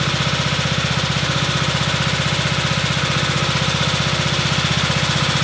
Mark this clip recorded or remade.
recorded